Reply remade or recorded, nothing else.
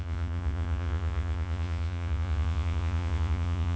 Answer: remade